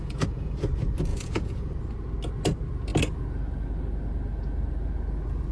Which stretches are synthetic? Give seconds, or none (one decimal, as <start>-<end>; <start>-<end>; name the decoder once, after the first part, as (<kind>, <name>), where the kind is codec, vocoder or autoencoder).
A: 0.0-0.6 (vocoder, Vocos); 1.1-1.7